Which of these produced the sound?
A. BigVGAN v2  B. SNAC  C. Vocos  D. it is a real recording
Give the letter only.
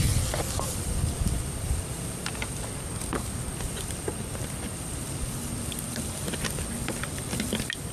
D